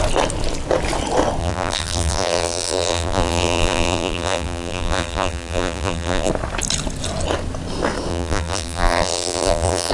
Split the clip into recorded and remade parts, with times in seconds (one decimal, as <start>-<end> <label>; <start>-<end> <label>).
0.0-1.4 recorded; 1.4-6.3 remade; 6.3-8.1 recorded; 8.1-9.9 remade